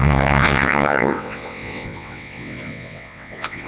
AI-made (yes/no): yes